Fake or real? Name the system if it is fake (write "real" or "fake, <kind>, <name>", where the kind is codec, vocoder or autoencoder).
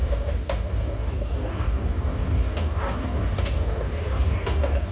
fake, codec, DAC